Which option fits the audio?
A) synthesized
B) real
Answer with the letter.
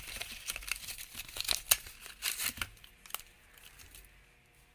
B